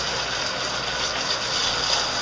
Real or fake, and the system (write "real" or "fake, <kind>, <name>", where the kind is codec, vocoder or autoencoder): real